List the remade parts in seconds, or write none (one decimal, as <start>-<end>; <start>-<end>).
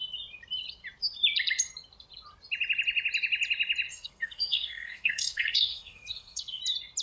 3.9-6.6